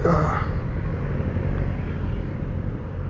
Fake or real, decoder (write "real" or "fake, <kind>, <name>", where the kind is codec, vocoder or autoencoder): real